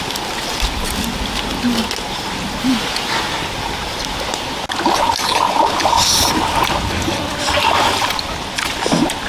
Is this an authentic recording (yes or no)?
yes